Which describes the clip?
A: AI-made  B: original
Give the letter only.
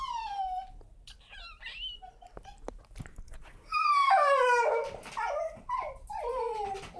B